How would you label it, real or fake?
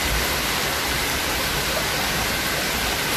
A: real